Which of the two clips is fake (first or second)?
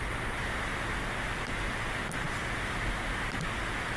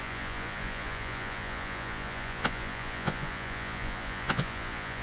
second